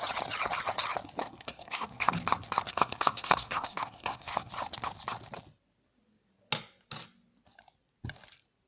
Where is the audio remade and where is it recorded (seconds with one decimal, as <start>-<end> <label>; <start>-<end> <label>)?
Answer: 0.0-1.2 recorded; 1.2-2.1 remade; 2.1-2.7 recorded; 2.7-4.5 remade; 4.5-8.7 recorded